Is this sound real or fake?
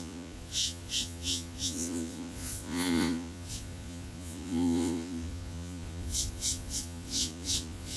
fake